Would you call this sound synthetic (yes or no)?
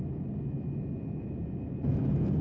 no